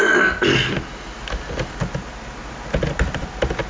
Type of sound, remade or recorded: recorded